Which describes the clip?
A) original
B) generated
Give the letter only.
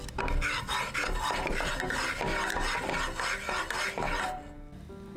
A